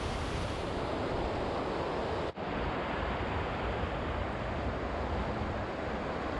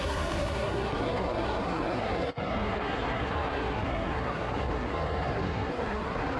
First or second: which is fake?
second